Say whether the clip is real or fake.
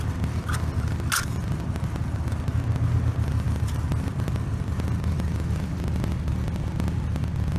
real